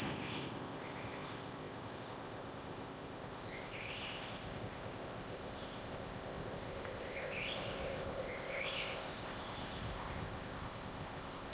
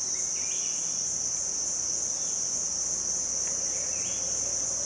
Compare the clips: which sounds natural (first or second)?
second